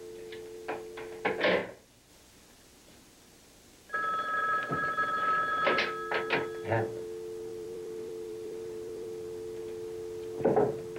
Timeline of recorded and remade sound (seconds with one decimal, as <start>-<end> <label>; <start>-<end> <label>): 0.0-1.6 recorded; 1.6-2.1 remade; 2.1-7.5 recorded; 7.5-9.6 remade; 9.6-11.0 recorded